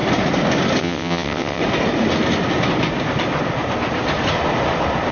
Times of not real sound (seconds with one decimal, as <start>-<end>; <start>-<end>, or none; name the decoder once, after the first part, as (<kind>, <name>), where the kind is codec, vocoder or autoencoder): 0.8-1.6 (vocoder, WaveNeXt)